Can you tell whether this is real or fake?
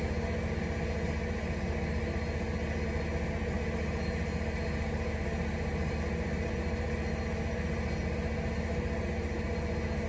real